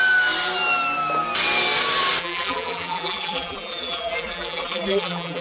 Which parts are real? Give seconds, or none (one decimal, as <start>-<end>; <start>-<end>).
0.0-2.2